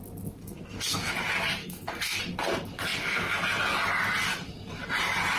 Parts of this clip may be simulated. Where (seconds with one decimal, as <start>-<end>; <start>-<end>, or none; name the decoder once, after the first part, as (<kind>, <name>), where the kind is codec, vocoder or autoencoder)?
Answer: 0.4-1.1 (codec, SNAC); 1.6-2.2